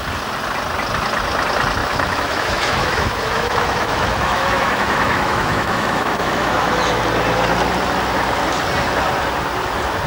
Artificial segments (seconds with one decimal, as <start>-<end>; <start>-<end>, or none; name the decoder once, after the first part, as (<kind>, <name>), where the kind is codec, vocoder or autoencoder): 1.8-7.0 (autoencoder, DAC-VAE)